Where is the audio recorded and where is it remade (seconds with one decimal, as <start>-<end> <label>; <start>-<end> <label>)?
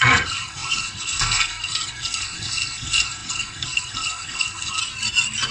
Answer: 0.0-4.8 remade; 4.8-5.5 recorded